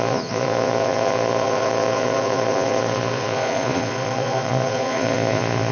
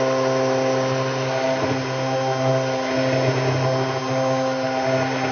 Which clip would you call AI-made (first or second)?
first